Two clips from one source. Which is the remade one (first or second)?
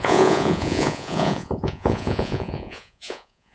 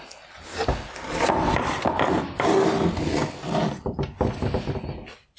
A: first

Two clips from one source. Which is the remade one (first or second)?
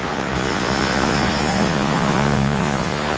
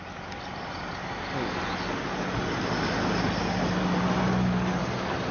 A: first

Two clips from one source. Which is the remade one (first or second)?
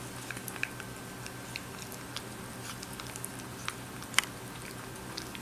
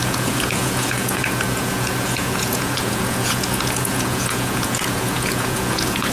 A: second